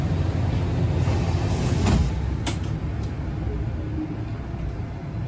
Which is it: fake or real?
real